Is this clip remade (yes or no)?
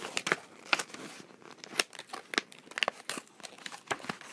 no